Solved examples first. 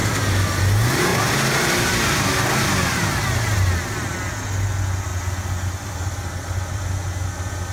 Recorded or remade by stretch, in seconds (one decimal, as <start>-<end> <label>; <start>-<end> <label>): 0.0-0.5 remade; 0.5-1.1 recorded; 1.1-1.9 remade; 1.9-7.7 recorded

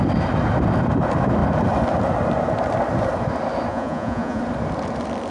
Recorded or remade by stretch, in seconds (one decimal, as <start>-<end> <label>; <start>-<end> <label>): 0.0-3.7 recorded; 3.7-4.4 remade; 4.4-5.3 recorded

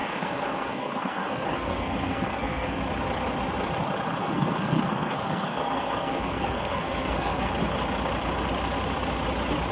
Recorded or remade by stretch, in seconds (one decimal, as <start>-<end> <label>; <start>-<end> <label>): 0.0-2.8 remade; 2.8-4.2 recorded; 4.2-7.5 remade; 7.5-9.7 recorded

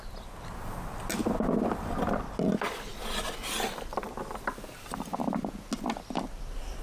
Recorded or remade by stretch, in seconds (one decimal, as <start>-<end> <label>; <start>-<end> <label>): 0.0-6.8 recorded

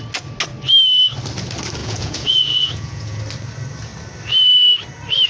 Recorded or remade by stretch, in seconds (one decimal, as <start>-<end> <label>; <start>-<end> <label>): 0.0-1.8 recorded; 1.8-3.2 remade; 3.2-5.3 recorded